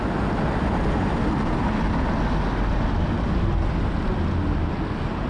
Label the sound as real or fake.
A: real